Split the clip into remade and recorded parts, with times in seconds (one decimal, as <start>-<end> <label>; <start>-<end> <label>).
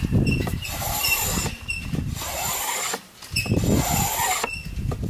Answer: 0.0-0.4 recorded; 0.4-2.5 remade; 2.5-5.1 recorded